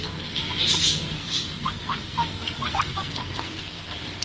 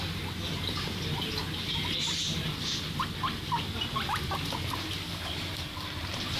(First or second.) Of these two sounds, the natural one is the second